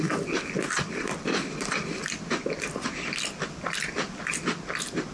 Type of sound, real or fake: real